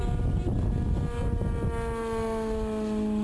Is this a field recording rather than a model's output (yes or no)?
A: yes